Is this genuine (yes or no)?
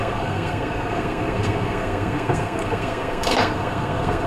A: no